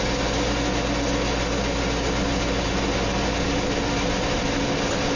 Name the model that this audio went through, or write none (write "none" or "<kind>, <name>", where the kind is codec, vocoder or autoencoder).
none